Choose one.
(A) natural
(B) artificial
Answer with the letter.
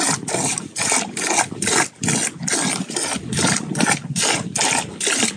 A